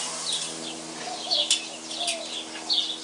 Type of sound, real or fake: real